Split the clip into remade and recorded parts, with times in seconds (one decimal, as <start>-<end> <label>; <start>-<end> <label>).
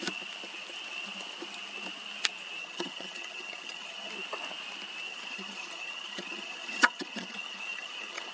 0.0-2.6 recorded; 2.6-4.1 remade; 4.1-5.1 recorded; 5.1-8.3 remade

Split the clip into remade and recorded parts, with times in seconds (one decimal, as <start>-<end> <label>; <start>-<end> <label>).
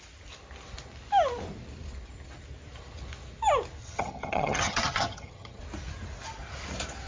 0.0-3.8 recorded; 3.8-5.6 remade; 5.6-7.1 recorded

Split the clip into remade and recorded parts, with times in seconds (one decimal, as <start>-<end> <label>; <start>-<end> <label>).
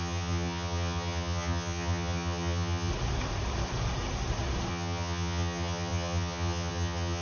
0.0-2.9 remade; 2.9-4.7 recorded; 4.7-7.2 remade